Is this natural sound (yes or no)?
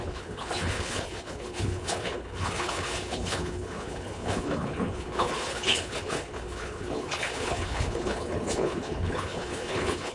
no